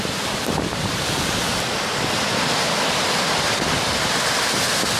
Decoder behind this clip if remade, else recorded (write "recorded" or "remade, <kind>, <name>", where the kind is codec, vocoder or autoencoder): remade, vocoder, BigVGAN v2